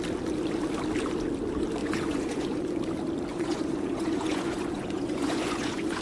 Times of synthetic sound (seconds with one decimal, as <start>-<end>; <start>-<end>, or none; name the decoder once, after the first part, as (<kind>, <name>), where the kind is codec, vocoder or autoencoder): 1.8-2.8 (vocoder, Vocos); 3.3-6.0